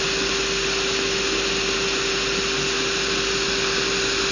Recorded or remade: recorded